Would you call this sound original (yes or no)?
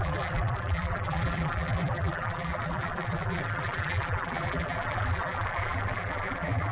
no